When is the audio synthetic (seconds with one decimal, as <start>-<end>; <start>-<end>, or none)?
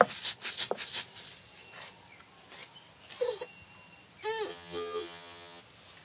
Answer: 4.5-5.6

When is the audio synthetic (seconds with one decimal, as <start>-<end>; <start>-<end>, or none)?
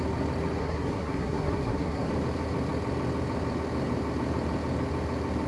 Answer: 0.6-2.1